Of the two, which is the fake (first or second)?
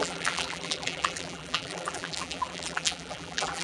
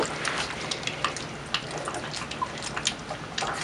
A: first